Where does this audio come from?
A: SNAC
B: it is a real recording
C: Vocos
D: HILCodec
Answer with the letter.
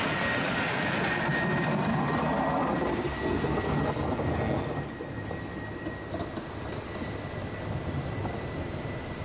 B